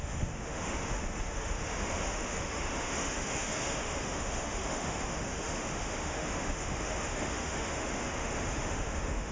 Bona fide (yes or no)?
no